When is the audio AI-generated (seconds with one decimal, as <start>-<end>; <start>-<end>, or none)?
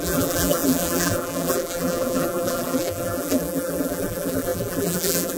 0.0-5.4